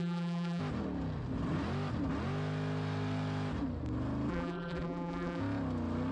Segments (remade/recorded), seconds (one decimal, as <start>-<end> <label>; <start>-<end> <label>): 0.0-0.6 remade; 0.6-4.3 recorded; 4.3-5.4 remade; 5.4-6.1 recorded